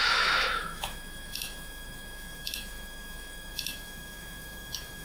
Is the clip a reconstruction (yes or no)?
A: yes